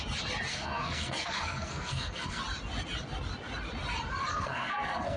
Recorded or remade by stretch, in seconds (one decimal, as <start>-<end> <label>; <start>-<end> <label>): 0.0-0.5 recorded; 0.5-2.4 remade; 2.4-4.3 recorded; 4.3-5.2 remade